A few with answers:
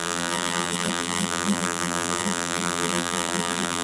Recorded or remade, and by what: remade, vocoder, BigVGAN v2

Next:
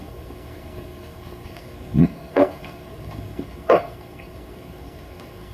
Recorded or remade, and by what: remade, codec, SNAC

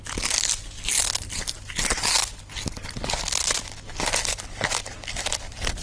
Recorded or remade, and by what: recorded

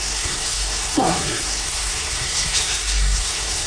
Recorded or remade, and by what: remade, codec, SNAC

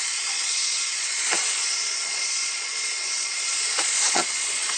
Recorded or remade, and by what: remade, vocoder, Vocos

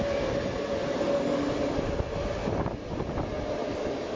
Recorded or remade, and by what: recorded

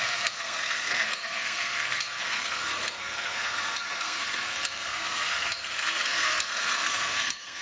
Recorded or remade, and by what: remade, codec, SNAC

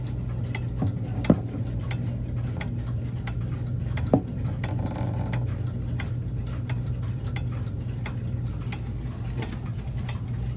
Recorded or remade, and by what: recorded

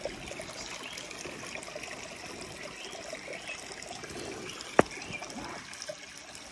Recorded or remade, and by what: recorded